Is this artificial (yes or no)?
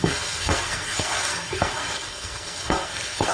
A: yes